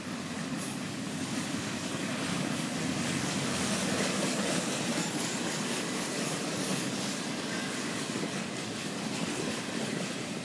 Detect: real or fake fake